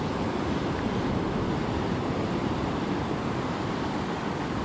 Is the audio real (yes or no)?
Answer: yes